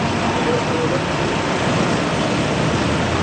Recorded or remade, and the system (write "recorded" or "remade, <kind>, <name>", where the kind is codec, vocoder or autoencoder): recorded